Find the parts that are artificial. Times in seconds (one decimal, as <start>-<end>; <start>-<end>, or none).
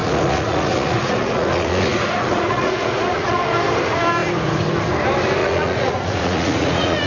0.0-3.4; 5.4-7.1